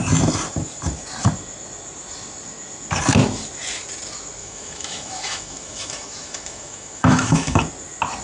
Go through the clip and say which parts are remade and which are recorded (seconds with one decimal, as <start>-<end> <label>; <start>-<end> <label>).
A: 0.0-4.4 recorded; 4.4-7.6 remade; 7.6-8.2 recorded

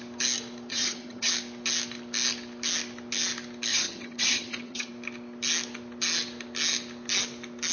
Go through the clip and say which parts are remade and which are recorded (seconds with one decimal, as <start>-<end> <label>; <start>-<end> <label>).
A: 0.0-0.7 recorded; 0.7-1.3 remade; 1.3-3.7 recorded; 3.7-4.9 remade; 4.9-7.7 recorded

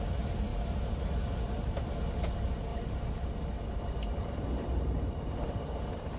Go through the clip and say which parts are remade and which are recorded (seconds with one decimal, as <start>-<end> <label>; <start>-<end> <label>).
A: 0.0-2.7 recorded; 2.7-3.3 remade; 3.3-6.2 recorded

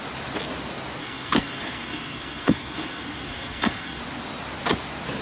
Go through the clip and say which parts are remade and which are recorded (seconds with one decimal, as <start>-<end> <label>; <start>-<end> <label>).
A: 0.0-1.0 recorded; 1.0-4.0 remade; 4.0-5.2 recorded

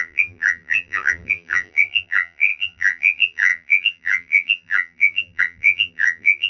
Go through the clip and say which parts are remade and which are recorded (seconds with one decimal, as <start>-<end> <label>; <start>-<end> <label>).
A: 0.0-6.5 remade

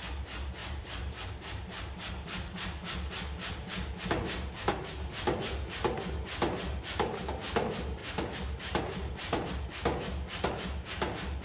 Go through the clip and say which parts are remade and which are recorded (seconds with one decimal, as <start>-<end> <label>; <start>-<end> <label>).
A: 0.0-0.6 recorded; 0.6-3.1 remade; 3.1-8.0 recorded; 8.0-9.5 remade; 9.5-11.4 recorded

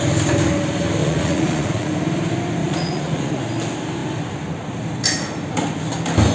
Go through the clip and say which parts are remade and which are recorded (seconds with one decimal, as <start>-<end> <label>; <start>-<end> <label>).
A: 0.0-1.0 recorded; 1.0-1.9 remade; 1.9-2.6 recorded; 2.6-3.4 remade; 3.4-6.3 recorded